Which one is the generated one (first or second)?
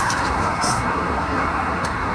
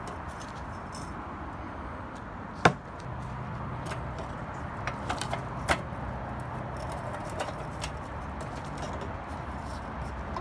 first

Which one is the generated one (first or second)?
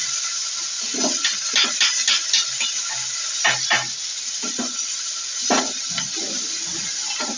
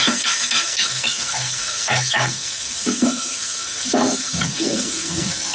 second